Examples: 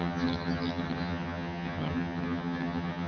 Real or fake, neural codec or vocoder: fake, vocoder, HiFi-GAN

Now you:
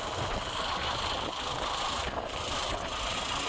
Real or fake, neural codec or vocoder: real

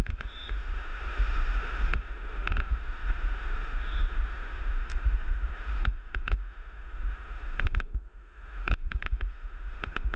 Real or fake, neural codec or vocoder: fake, autoencoder, DAC-VAE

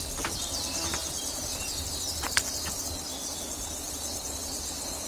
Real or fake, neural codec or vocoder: real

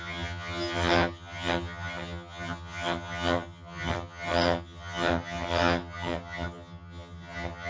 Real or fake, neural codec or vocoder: fake, vocoder, HiFi-GAN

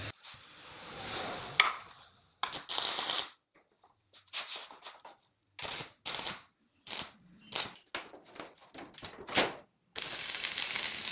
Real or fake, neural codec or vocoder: real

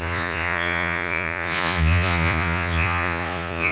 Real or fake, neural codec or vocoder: fake, vocoder, Vocos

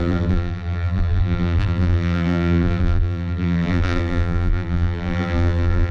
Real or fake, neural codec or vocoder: fake, vocoder, BigVGAN v2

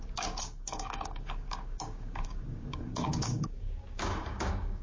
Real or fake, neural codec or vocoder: fake, codec, DAC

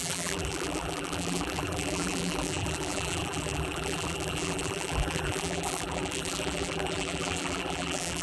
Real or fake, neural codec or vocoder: fake, vocoder, BigVGAN v2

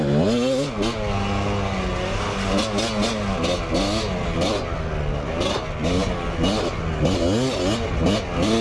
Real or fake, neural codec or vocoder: real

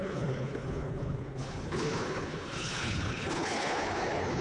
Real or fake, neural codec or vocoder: fake, codec, HILCodec